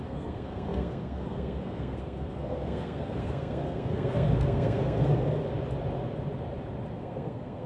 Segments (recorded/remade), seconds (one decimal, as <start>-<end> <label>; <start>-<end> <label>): 0.0-5.4 remade; 5.4-6.9 recorded; 6.9-7.7 remade